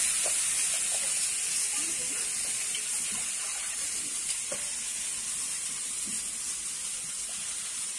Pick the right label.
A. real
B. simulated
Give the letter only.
A